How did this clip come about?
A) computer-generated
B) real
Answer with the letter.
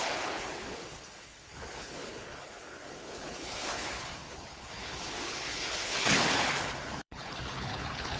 A